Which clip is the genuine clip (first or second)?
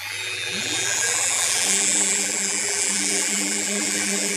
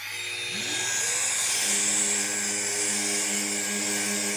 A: second